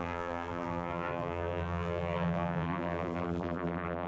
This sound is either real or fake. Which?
fake